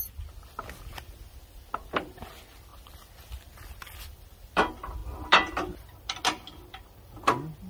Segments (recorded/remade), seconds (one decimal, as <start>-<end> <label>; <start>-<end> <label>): 0.0-7.7 recorded